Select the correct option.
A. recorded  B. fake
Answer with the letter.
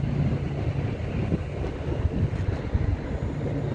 A